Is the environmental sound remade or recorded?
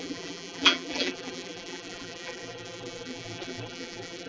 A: remade